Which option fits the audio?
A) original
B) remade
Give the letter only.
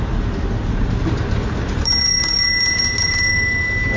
A